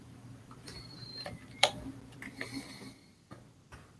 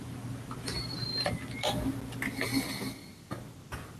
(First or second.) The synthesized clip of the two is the first